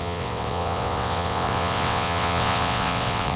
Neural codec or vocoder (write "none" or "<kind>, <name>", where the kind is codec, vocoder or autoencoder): vocoder, WaveNeXt